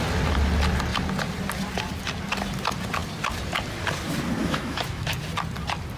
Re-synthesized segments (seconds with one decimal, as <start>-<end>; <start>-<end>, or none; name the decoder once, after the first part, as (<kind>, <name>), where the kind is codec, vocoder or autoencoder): 4.4-5.1 (autoencoder, DAC-VAE)